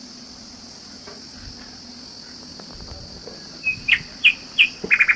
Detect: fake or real real